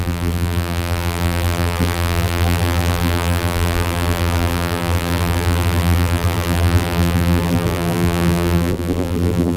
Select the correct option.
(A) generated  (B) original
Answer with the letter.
A